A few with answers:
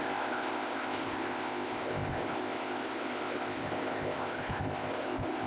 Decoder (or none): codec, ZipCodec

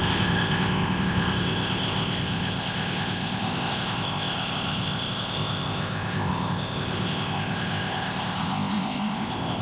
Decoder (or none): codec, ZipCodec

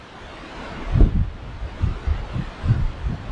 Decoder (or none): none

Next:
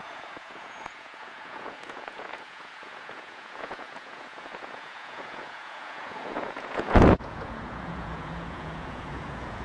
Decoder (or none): vocoder, Vocos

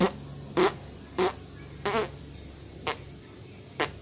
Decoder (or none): none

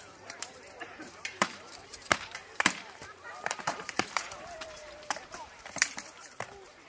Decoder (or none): vocoder, BigVGAN v2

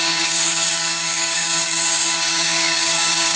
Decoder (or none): codec, DAC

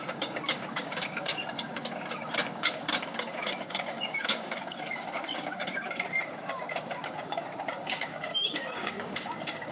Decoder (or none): codec, DAC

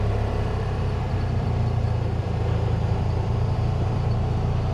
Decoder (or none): vocoder, BigVGAN v2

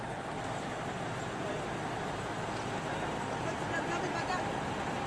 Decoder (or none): none